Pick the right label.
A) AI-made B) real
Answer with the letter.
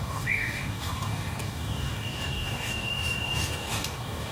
A